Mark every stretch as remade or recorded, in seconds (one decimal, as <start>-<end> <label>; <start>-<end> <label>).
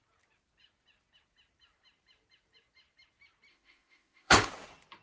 0.0-3.5 recorded; 3.5-4.5 remade; 4.5-5.0 recorded